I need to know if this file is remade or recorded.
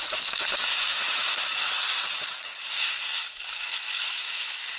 remade